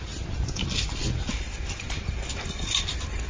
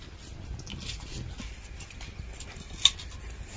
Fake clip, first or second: first